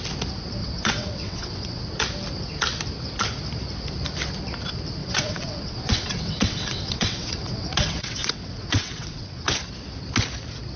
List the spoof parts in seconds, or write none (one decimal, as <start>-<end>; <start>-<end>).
0.6-1.8; 5.0-9.6